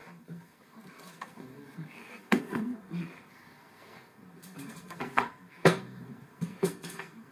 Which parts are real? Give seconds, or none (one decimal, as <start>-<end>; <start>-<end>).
none